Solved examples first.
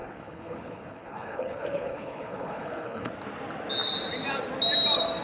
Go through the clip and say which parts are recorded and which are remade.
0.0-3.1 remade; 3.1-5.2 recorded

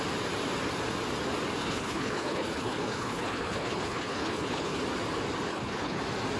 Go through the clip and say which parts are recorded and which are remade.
0.0-1.6 recorded; 1.6-4.8 remade; 4.8-5.5 recorded; 5.5-6.0 remade; 6.0-6.4 recorded

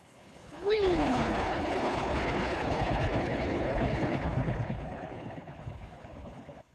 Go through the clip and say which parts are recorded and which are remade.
0.0-6.7 remade

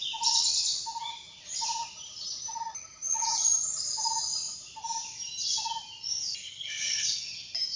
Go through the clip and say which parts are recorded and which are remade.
0.0-6.4 recorded; 6.4-7.2 remade; 7.2-7.8 recorded

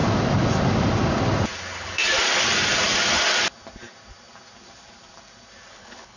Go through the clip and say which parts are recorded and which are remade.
0.0-1.6 recorded; 1.6-2.0 remade; 2.0-5.7 recorded; 5.7-6.2 remade